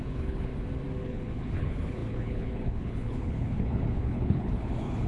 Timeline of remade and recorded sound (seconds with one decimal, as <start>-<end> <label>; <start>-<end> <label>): 0.0-0.5 remade; 0.5-1.0 recorded; 1.0-5.1 remade